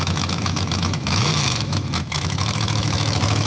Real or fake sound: fake